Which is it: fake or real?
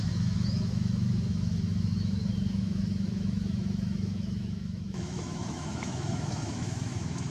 fake